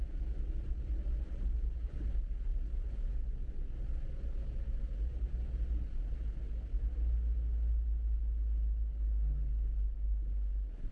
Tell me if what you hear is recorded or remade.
recorded